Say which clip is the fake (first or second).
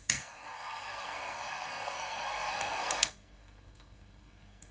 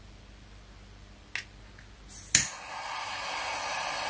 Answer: first